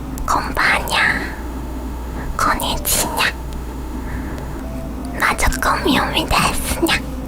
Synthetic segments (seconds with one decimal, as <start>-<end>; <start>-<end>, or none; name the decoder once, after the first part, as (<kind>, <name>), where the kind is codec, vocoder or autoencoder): 1.2-2.6 (autoencoder, DAC-VAE); 3.0-4.6

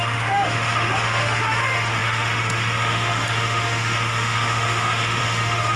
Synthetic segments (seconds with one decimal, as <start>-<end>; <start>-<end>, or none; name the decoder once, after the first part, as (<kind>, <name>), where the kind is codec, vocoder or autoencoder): 0.0-5.8 (autoencoder, DAC-VAE)

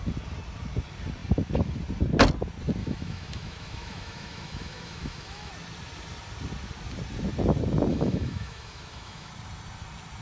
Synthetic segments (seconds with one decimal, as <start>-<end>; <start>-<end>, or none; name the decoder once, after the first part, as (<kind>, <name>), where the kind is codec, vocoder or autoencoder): 2.8-5.5 (autoencoder, DAC-VAE); 7.9-9.3

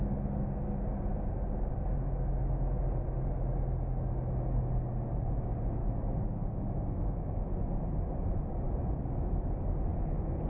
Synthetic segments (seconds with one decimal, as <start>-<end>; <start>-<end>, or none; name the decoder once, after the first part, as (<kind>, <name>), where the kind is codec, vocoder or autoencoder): 5.8-7.4 (autoencoder, DAC-VAE)

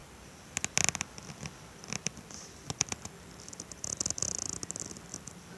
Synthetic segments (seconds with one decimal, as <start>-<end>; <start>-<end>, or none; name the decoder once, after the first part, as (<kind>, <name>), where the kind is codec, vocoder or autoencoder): none